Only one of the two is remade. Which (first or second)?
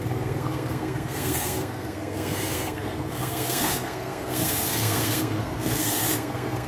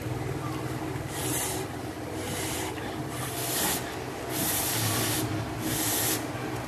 first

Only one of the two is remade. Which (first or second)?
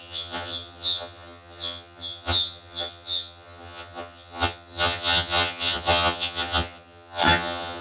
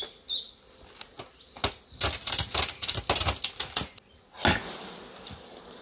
first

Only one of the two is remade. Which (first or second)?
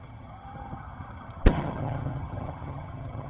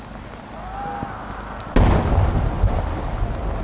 first